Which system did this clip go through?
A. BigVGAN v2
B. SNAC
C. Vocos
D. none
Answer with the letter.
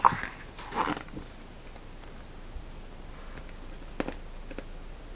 D